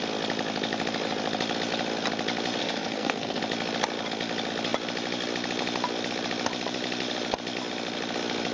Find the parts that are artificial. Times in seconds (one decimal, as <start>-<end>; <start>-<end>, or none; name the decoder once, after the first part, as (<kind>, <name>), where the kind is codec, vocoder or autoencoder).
2.6-3.4 (codec, SNAC)